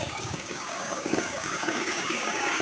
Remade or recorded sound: remade